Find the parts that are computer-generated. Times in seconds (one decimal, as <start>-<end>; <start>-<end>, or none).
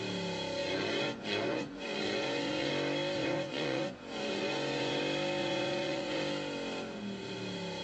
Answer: 0.6-2.7; 3.2-5.0; 5.4-6.2